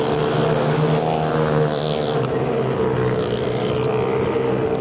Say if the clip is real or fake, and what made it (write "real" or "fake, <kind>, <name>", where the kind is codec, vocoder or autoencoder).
real